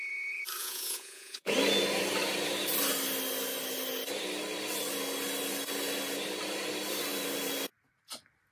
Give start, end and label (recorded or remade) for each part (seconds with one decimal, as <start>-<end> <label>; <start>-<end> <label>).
0.0-0.6 recorded; 0.6-1.5 remade; 1.5-8.5 recorded